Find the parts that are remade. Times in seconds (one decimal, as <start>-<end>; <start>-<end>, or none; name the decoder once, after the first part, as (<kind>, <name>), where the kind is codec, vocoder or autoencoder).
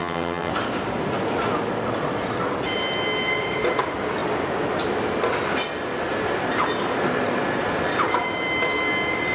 0.0-0.5 (vocoder, HiFi-GAN)